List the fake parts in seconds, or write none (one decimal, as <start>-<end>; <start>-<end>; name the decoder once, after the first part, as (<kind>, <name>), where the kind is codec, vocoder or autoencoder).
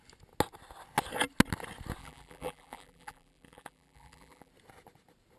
2.0-4.5 (vocoder, BigVGAN v2)